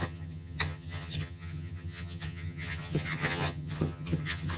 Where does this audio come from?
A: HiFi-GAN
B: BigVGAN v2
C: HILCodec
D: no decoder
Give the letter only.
A